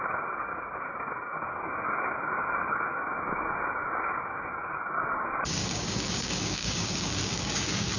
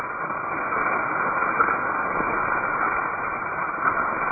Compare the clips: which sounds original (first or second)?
second